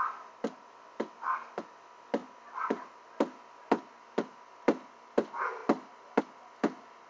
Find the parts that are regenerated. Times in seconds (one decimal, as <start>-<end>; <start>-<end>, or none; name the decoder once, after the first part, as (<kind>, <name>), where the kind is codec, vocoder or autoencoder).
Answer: none